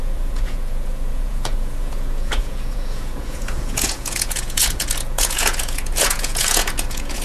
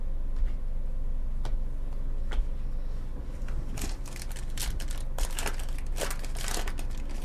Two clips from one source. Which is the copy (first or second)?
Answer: first